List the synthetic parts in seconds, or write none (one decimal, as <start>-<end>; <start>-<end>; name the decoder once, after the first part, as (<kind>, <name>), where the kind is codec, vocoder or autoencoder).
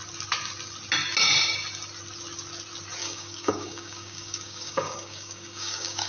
3.0-6.1 (codec, DAC)